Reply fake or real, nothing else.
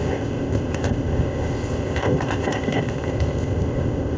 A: fake